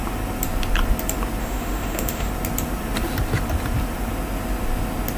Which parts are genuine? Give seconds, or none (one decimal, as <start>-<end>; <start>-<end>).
0.0-1.4; 2.3-5.2